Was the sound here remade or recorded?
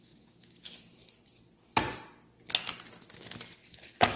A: recorded